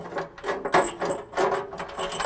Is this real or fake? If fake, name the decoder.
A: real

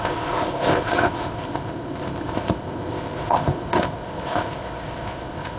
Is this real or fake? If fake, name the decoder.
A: fake, codec, ZipCodec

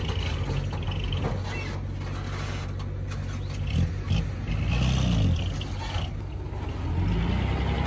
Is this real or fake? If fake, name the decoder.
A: real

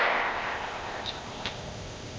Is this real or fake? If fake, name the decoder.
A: fake, codec, ZipCodec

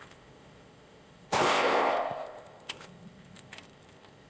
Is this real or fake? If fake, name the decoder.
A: fake, codec, ZipCodec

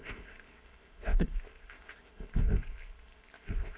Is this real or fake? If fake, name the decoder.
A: fake, codec, ZipCodec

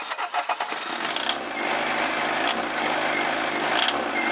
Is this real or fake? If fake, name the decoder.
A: real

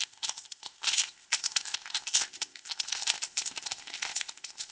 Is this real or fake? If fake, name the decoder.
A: fake, codec, ZipCodec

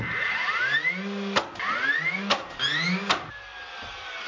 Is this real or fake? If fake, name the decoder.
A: real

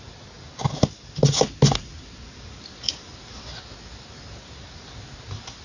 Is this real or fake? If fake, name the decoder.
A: real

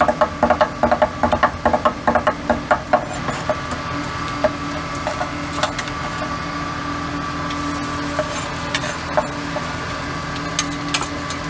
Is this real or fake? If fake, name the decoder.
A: real